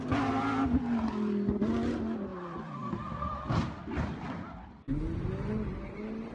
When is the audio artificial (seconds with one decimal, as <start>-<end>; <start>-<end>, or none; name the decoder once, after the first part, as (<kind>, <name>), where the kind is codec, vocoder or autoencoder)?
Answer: 2.3-4.7 (vocoder, BigVGAN v2)